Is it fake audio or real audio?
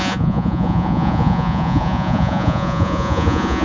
fake